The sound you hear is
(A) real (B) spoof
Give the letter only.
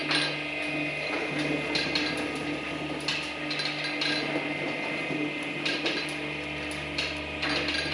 A